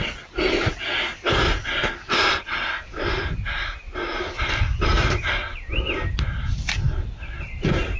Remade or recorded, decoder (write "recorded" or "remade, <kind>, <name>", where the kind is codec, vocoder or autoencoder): recorded